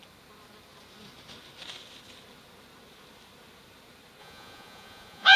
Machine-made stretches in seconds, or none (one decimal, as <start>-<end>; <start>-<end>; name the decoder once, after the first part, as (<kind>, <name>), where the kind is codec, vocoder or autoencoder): 4.2-5.4 (vocoder, Vocos)